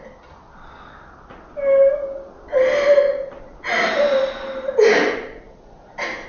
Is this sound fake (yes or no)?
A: no